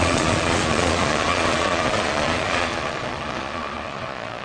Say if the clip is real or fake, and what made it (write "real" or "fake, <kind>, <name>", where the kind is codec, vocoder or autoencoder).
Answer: fake, vocoder, Vocos